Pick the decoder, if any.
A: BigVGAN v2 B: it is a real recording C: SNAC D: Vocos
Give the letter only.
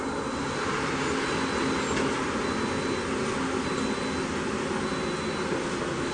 B